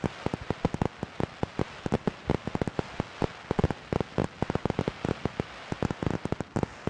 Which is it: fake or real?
real